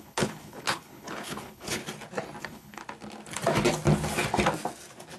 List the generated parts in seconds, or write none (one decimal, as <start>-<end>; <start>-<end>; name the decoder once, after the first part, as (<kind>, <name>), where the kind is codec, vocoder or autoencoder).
0.0-1.8 (codec, HILCodec); 2.4-2.8